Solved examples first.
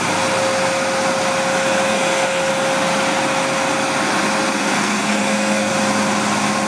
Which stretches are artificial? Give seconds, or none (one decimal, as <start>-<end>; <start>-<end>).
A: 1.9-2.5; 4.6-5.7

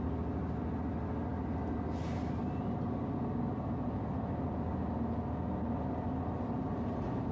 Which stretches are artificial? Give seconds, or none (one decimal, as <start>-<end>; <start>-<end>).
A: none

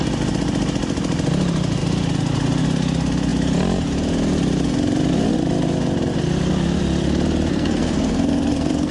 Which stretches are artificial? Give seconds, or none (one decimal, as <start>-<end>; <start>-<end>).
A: 7.5-8.9

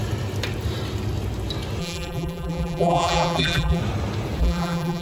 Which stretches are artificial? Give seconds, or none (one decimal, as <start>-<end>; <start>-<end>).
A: 1.8-3.8; 4.4-5.0

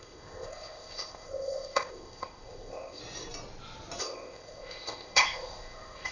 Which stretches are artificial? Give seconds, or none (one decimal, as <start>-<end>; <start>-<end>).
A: 0.0-3.0; 4.0-6.1